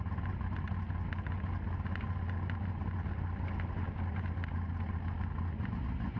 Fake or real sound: real